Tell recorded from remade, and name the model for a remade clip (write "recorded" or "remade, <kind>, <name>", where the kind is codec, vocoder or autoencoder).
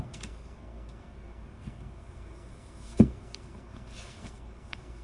remade, codec, SNAC